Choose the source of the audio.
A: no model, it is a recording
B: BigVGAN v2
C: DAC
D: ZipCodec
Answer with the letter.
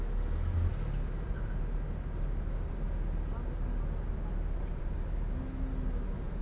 A